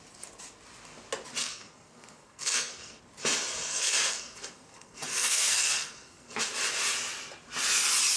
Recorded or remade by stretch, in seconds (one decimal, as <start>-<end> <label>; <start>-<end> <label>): 0.0-1.4 recorded; 1.4-3.0 remade; 3.0-3.7 recorded; 3.7-6.4 remade; 6.4-8.2 recorded